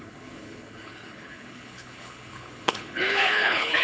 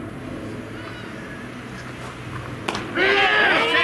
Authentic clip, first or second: second